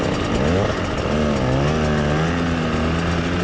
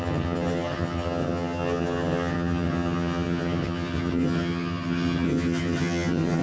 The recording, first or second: first